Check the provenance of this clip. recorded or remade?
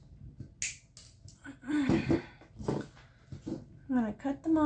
recorded